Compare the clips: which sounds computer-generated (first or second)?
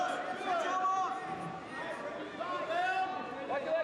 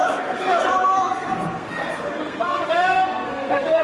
second